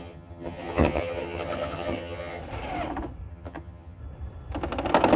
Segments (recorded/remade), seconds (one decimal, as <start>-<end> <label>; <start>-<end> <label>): 0.0-2.4 remade; 2.4-3.3 recorded; 3.3-4.0 remade; 4.0-5.2 recorded

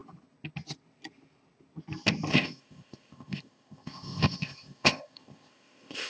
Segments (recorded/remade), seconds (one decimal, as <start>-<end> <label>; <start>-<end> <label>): 0.0-2.3 recorded; 2.3-6.1 remade